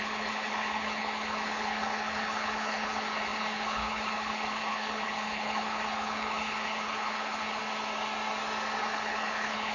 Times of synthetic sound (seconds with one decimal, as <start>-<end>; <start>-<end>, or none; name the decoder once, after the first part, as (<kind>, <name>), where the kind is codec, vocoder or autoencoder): 0.0-7.6 (codec, HILCodec); 8.8-9.7